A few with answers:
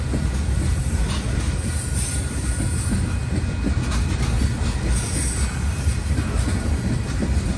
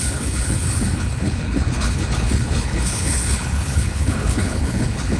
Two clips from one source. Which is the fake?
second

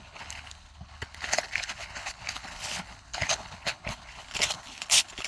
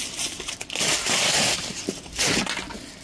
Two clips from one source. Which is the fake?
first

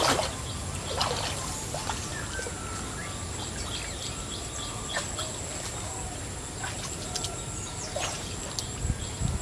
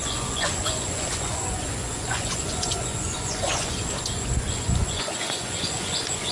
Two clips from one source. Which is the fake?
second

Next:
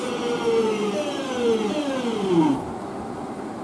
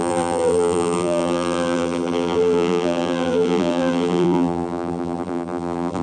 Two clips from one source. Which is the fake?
second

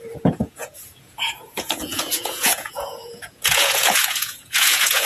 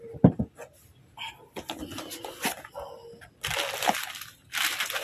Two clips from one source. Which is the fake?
first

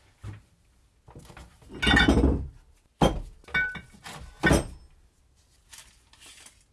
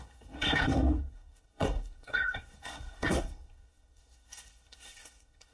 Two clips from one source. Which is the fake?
second